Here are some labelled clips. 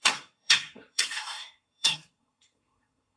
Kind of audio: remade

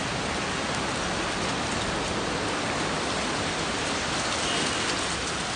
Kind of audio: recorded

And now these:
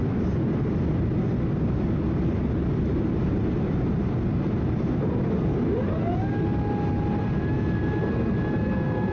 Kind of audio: recorded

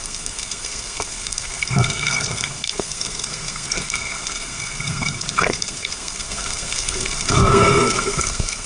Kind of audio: remade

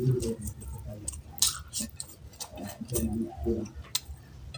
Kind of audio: recorded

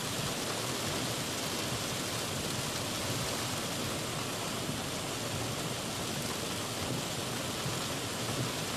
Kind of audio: recorded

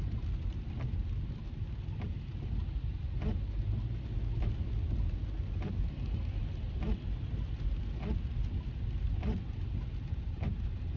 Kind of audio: recorded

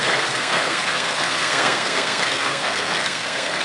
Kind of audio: remade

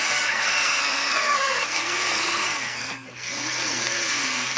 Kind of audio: remade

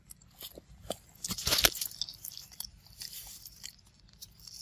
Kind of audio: recorded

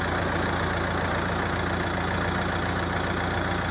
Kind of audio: recorded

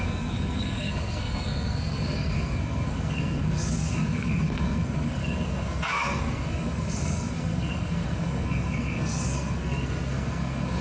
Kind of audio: remade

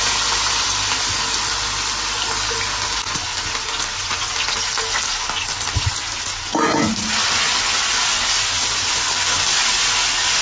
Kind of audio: recorded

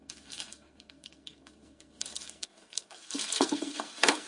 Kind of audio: remade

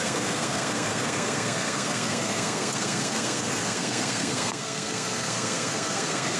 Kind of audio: remade